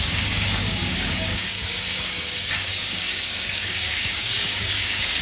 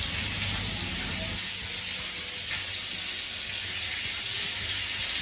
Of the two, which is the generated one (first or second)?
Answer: first